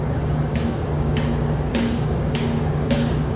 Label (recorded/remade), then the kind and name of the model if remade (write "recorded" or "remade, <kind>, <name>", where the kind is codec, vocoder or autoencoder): remade, codec, DAC